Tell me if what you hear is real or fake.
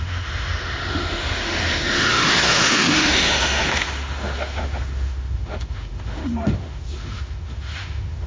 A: fake